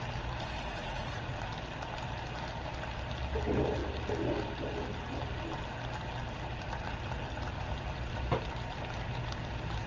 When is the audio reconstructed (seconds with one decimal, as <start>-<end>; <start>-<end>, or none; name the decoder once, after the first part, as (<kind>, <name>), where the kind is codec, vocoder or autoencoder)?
0.6-1.5 (vocoder, Vocos)